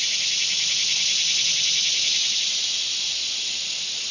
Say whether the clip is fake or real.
real